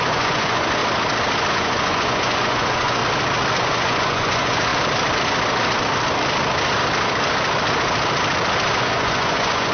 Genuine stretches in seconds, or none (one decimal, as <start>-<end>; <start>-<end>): 0.8-1.5; 3.0-3.6; 4.7-8.8